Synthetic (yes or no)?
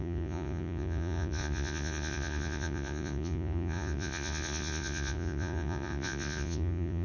yes